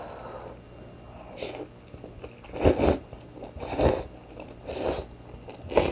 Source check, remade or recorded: recorded